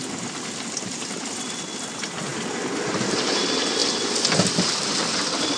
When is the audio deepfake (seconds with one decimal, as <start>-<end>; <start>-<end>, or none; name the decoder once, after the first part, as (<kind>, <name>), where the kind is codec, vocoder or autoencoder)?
none